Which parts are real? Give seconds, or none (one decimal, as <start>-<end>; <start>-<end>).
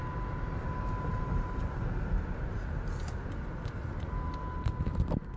0.0-1.1; 1.8-5.4